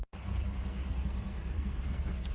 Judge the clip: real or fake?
fake